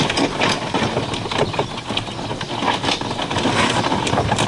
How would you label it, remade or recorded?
recorded